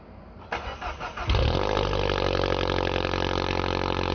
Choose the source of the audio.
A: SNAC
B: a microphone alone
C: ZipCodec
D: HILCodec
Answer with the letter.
B